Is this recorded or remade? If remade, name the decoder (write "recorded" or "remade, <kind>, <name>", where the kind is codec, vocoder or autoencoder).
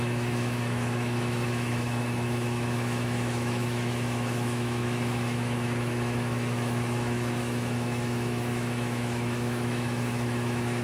remade, autoencoder, DAC-VAE